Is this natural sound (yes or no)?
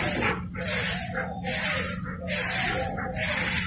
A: yes